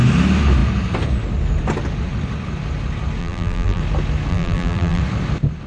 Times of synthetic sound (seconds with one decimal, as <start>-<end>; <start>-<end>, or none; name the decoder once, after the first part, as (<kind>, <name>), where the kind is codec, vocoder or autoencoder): 3.2-3.8 (vocoder, BigVGAN v2); 4.3-5.0

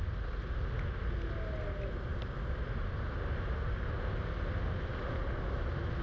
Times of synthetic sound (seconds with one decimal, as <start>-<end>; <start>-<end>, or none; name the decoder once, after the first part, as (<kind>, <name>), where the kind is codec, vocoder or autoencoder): 2.1-4.3 (vocoder, BigVGAN v2)